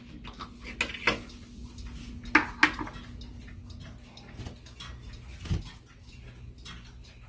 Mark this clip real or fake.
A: real